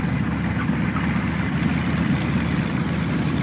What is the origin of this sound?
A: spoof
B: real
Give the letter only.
B